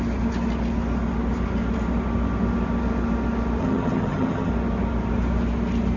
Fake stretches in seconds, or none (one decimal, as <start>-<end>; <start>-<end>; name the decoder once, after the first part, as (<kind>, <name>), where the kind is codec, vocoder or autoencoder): 3.6-4.5 (vocoder, HiFi-GAN)

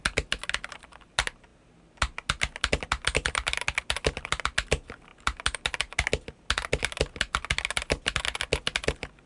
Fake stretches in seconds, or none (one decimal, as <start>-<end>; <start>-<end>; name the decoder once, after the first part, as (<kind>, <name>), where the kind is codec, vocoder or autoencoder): none

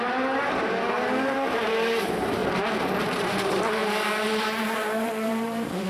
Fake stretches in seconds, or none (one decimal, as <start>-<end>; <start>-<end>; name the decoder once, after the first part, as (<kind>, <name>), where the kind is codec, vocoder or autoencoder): 0.0-2.4 (vocoder, BigVGAN v2); 3.0-5.9

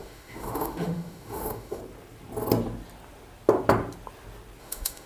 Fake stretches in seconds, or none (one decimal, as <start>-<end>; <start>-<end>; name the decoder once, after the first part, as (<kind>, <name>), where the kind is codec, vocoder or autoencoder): 0.0-1.8 (autoencoder, DAC-VAE); 4.6-5.1

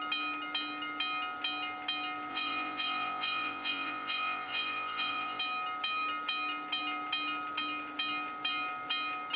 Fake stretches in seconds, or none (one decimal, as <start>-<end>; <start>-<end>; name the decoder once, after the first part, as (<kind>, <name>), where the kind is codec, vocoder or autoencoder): 2.3-5.4 (vocoder, Vocos)

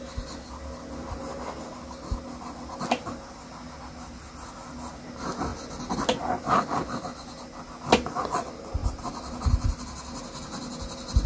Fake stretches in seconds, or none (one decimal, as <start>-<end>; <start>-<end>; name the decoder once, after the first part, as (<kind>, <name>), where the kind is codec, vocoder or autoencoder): none

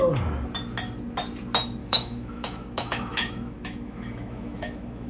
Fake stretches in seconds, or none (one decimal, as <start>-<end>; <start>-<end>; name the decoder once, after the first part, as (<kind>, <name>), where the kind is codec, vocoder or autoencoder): 1.8-5.1 (autoencoder, DAC-VAE)